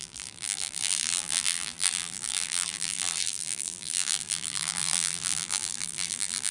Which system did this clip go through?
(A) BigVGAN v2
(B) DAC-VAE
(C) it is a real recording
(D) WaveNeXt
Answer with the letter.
A